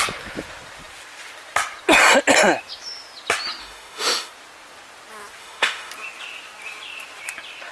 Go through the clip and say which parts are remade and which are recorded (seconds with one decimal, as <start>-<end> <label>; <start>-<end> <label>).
0.0-3.6 recorded; 3.6-4.3 remade; 4.3-5.4 recorded; 5.4-5.9 remade; 5.9-7.7 recorded